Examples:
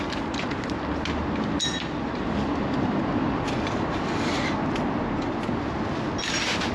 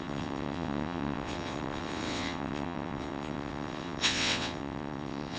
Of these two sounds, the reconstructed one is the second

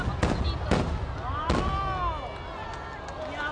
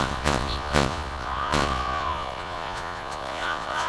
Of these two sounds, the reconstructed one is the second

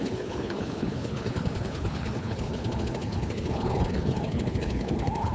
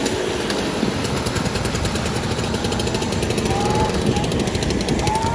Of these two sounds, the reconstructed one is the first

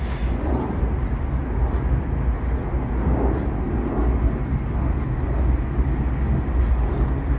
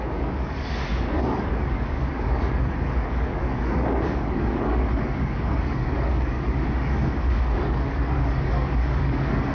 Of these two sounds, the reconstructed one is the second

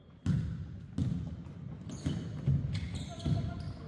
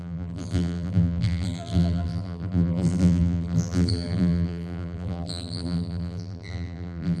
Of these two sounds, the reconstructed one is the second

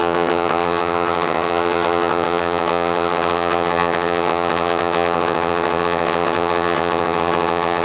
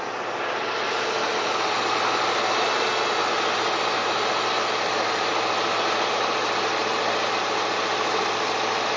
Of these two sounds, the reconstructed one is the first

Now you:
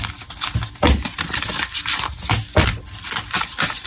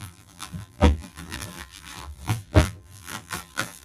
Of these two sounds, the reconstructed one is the second